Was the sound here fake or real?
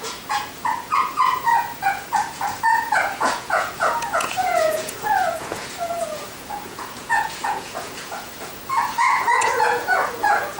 fake